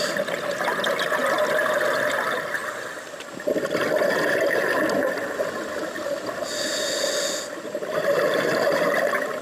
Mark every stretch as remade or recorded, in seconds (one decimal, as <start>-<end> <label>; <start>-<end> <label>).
0.0-9.4 recorded